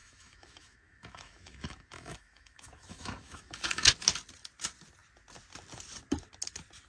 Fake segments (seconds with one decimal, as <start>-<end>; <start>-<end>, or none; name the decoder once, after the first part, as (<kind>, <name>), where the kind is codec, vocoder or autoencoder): 0.0-3.9 (autoencoder, DAC-VAE)